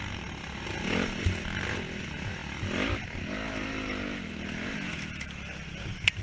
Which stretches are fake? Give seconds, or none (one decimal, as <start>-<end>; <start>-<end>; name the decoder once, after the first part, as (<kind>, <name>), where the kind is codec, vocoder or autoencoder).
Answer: none